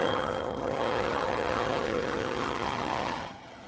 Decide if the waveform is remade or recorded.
remade